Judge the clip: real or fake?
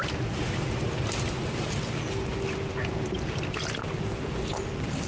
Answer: real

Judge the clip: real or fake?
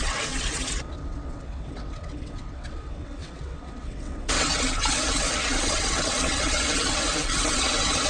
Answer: fake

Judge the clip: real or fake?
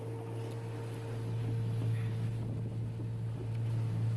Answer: real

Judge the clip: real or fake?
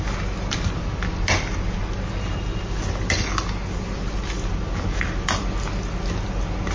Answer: real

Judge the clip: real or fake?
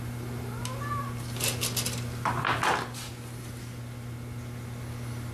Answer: real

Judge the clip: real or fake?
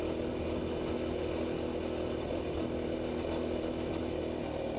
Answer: real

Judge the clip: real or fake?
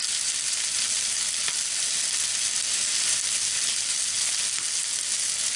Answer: real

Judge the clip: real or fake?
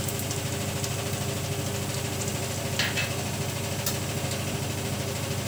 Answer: real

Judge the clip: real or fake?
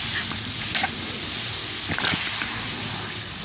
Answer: real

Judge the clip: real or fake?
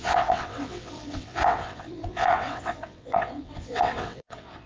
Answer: fake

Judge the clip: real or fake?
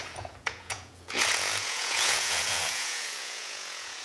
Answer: fake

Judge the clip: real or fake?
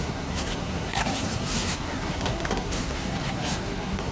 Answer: fake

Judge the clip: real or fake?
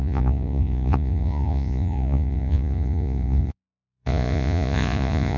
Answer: fake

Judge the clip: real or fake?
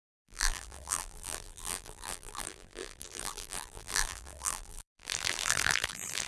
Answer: fake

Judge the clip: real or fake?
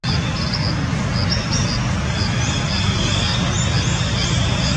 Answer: real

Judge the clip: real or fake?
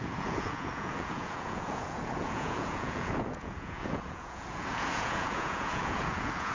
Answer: fake